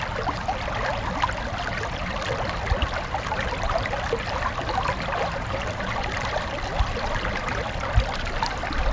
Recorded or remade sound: recorded